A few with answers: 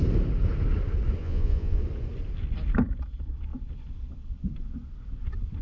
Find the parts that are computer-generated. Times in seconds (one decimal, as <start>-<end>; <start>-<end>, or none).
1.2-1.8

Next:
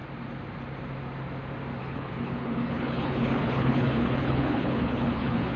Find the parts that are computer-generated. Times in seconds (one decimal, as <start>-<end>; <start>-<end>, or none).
1.8-5.6

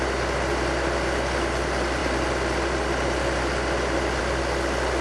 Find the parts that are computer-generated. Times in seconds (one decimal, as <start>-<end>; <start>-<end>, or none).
none

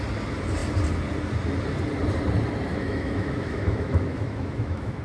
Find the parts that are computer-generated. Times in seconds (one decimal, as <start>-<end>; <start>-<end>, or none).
2.7-5.0

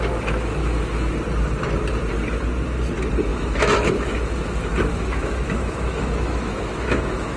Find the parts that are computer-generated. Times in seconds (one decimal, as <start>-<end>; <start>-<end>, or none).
0.6-1.1; 3.3-7.4

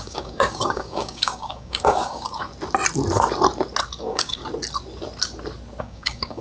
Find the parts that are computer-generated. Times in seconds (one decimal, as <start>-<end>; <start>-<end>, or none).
0.0-2.5; 4.0-4.4; 5.8-6.4

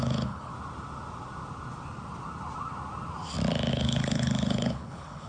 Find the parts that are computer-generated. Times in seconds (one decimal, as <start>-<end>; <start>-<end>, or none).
0.0-0.5; 3.7-5.3